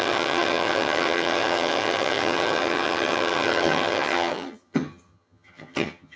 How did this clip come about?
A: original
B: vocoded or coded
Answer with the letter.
B